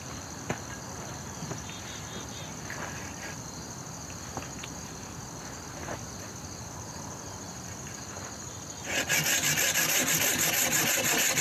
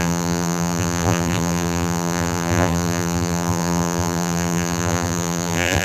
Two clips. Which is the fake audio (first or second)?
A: second